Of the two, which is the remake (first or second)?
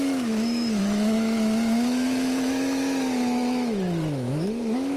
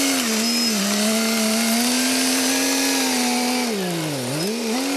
first